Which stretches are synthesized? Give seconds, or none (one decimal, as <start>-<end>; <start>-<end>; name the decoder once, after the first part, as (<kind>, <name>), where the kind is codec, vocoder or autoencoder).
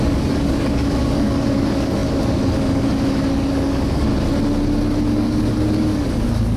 0.0-4.1 (codec, DAC); 5.1-6.6